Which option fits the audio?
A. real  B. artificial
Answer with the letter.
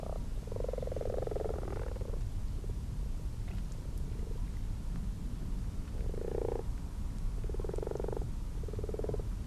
A